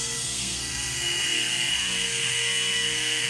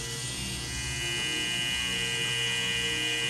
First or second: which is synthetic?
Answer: first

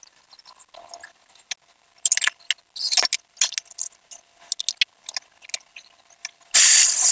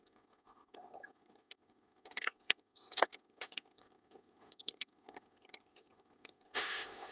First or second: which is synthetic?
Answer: second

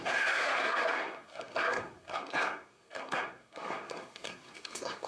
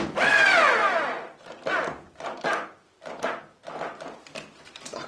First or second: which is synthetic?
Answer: first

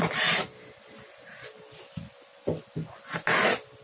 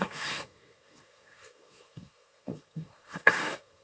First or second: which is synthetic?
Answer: second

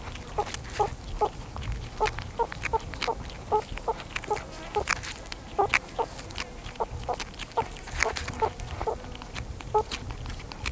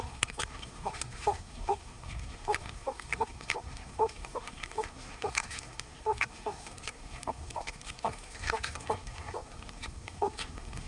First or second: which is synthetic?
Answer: second